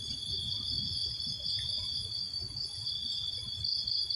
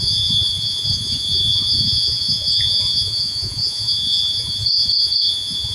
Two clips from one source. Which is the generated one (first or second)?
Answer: second